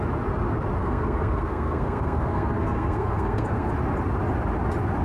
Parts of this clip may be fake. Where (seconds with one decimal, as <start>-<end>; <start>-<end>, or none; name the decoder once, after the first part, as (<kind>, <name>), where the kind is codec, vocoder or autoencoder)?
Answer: 0.8-3.7 (codec, SNAC)